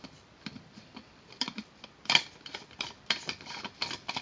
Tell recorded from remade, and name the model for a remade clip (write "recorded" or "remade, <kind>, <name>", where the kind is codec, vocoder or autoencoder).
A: remade, vocoder, BigVGAN v2